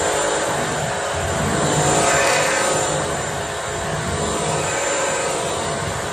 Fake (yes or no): no